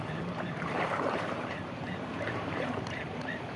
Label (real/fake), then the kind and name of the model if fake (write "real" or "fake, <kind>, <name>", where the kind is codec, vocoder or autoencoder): fake, vocoder, BigVGAN v2